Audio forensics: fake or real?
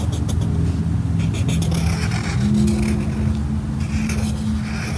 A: real